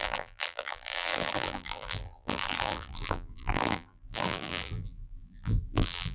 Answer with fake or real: fake